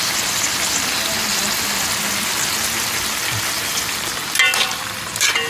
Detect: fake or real real